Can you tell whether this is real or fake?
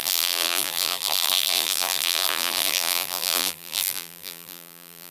fake